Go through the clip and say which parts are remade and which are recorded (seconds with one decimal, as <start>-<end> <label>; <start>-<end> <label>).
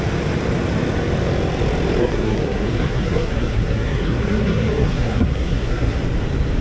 0.0-2.0 recorded; 2.0-6.0 remade; 6.0-6.6 recorded